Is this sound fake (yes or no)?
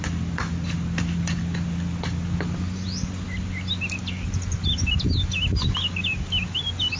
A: no